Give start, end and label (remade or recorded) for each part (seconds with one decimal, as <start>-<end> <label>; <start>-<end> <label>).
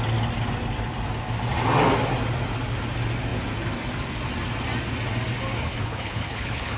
0.0-5.6 recorded; 5.6-6.8 remade